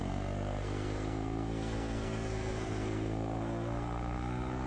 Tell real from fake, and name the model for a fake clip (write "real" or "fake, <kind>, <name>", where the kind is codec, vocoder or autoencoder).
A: fake, codec, SNAC